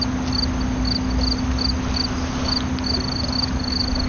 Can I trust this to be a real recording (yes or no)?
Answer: yes